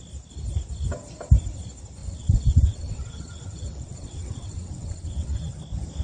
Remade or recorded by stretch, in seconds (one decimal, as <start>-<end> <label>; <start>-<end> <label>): 0.0-2.0 recorded; 2.0-5.6 remade; 5.6-6.0 recorded